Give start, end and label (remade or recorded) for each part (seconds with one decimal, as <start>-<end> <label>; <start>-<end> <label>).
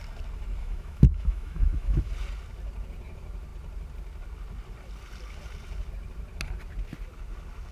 0.0-0.6 recorded; 0.6-2.1 remade; 2.1-7.7 recorded